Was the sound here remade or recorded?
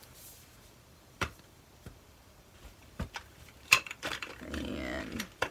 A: remade